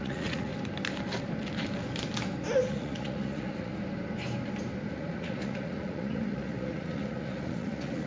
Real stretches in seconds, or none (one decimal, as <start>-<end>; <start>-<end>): 0.5-2.7; 3.7-4.9

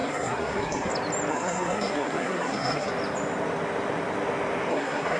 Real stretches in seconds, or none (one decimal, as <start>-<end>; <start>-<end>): 0.9-1.3; 2.9-4.7

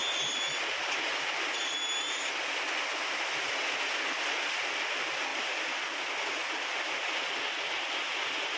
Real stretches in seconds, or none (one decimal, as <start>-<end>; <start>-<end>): 0.0-5.3; 6.8-8.6

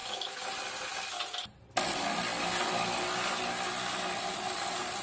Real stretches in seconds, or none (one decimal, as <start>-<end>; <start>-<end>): 0.5-5.0

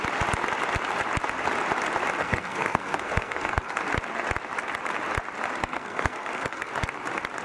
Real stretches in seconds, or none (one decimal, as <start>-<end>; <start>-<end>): 0.0-2.2; 3.8-5.6; 6.7-7.4